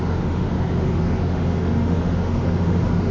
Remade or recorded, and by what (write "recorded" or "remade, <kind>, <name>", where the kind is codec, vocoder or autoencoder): remade, autoencoder, DAC-VAE